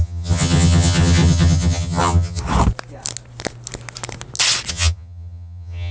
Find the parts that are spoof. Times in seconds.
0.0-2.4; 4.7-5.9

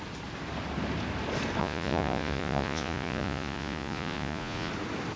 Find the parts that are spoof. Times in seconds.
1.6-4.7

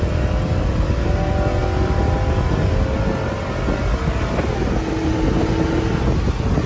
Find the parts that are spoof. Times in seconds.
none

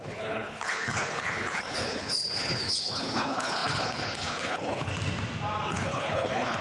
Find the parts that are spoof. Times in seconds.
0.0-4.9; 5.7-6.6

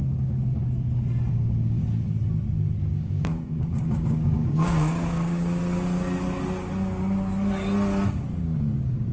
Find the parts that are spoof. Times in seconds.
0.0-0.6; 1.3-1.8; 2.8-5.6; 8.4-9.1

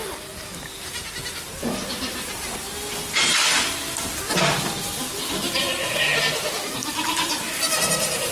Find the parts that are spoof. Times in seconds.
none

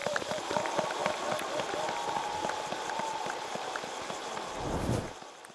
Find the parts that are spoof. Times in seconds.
0.0-0.6